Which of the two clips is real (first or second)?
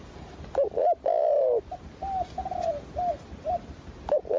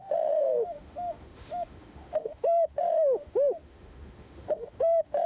first